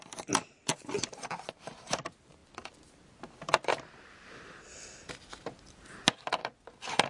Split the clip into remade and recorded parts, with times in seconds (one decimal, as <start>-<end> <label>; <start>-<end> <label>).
0.0-2.4 recorded; 2.4-5.3 remade; 5.3-6.4 recorded; 6.4-7.1 remade